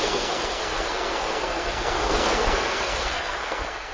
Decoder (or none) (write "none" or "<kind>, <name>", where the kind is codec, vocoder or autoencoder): codec, SNAC